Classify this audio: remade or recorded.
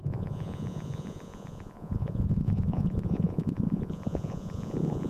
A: remade